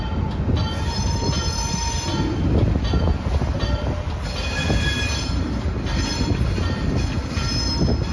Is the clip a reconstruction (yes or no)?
no